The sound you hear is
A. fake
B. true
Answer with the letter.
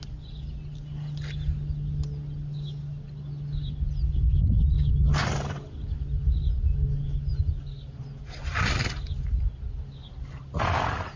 B